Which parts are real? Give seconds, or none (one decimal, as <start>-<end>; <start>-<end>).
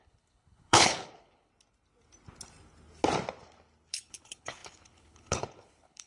1.5-3.9